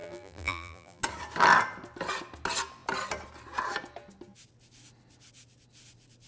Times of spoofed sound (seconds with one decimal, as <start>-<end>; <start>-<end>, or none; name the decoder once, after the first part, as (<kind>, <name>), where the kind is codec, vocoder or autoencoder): 0.0-1.0 (vocoder, BigVGAN v2)